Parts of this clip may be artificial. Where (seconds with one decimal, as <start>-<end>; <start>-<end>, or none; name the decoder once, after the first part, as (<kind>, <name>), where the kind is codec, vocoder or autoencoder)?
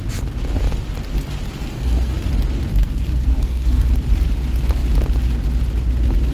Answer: 1.6-2.1 (codec, SNAC); 2.7-3.9